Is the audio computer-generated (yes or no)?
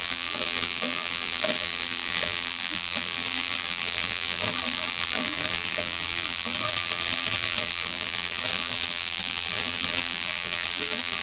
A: yes